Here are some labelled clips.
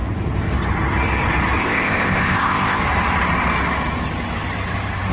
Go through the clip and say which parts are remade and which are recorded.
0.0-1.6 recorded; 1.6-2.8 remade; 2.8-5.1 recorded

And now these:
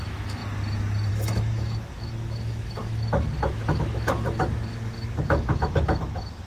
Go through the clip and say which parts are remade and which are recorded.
0.0-0.4 remade; 0.4-1.1 recorded; 1.1-6.5 remade

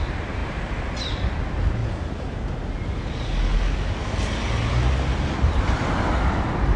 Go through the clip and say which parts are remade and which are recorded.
0.0-6.8 recorded

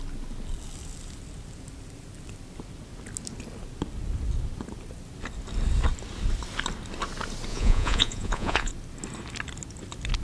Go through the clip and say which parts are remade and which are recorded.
0.0-7.5 recorded; 7.5-8.7 remade; 8.7-10.2 recorded

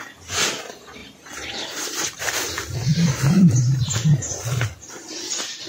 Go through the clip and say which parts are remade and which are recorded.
0.0-1.0 recorded; 1.0-2.2 remade; 2.2-2.9 recorded; 2.9-3.8 remade; 3.8-5.7 recorded

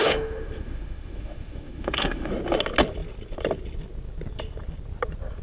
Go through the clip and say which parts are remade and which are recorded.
0.0-2.3 remade; 2.3-5.4 recorded

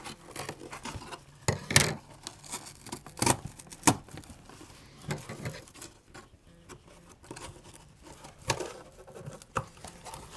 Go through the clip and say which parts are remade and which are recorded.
0.0-10.4 recorded